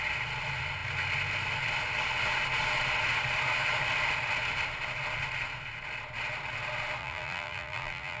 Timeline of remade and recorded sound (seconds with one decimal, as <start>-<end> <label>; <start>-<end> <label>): 0.0-7.0 recorded; 7.0-8.2 remade